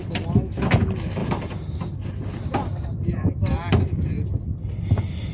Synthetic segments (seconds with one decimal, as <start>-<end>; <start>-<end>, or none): none